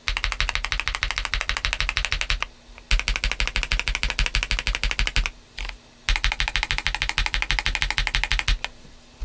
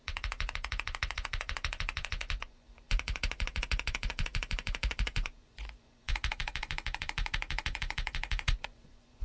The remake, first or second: second